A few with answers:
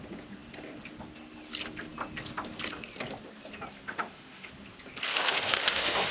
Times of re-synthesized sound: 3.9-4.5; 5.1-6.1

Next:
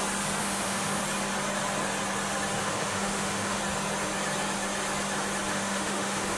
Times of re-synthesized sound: 0.4-1.0; 2.6-3.6; 5.5-6.4